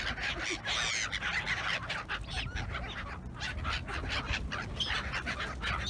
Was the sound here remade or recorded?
recorded